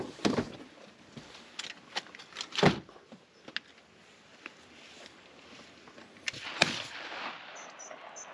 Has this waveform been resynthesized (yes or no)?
no